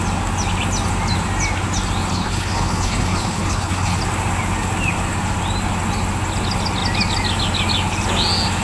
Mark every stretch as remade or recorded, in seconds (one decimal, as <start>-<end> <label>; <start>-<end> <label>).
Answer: 0.0-2.1 recorded; 2.1-4.0 remade; 4.0-8.6 recorded